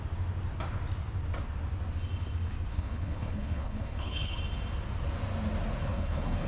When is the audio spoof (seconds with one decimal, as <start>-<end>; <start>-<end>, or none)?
2.7-4.4; 5.8-6.5